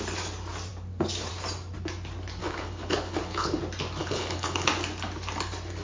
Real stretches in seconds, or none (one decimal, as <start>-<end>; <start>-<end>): 0.0-2.4; 3.6-4.0; 4.7-5.8